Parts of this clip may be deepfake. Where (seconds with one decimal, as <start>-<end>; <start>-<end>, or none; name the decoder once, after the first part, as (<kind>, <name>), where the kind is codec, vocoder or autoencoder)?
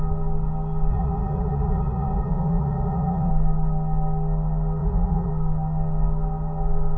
0.9-3.3 (vocoder, Vocos); 4.8-5.3